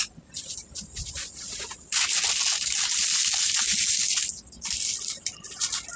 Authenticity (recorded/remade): recorded